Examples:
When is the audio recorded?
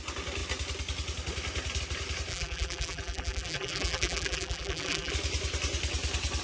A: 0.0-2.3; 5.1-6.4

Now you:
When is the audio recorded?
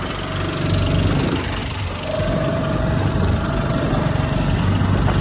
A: 0.0-1.6; 4.6-5.2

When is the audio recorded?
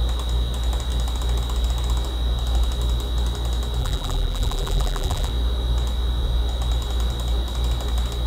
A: 0.0-3.8; 5.3-8.3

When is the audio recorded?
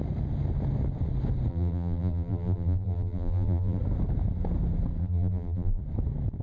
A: 0.0-1.5; 3.8-5.0; 5.8-6.4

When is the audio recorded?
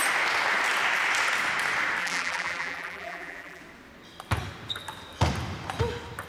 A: 0.0-2.0; 3.6-6.3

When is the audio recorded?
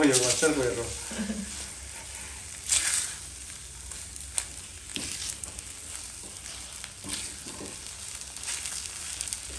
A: 0.0-9.6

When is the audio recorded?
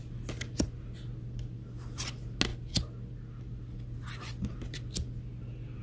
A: 0.0-5.8